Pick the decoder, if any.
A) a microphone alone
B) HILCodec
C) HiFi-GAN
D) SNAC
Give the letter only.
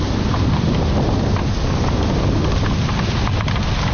A